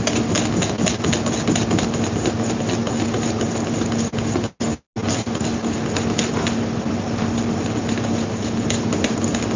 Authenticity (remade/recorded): recorded